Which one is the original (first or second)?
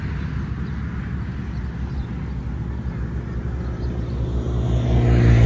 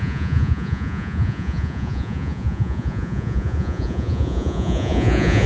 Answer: first